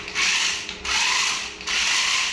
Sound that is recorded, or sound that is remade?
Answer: recorded